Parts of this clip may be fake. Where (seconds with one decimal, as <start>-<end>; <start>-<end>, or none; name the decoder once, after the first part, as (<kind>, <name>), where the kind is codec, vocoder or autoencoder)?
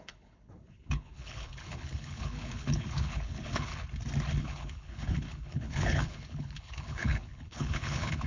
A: 0.0-3.7 (codec, HILCodec); 4.4-8.3